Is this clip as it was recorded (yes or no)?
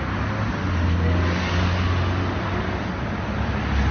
yes